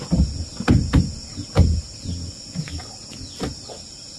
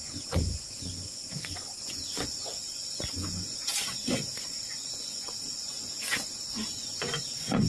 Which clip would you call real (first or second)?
first